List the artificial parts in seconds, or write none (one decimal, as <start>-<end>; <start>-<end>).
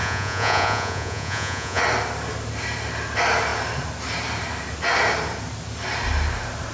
0.0-1.8